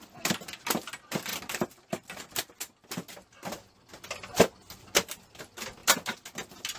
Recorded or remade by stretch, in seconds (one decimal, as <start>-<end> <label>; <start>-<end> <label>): 0.0-6.8 recorded